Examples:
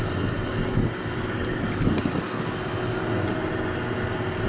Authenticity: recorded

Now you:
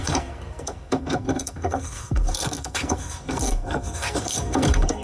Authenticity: remade